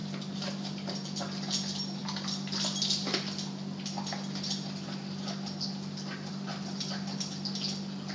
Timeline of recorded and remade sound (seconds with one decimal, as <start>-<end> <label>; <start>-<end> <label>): 0.0-8.1 recorded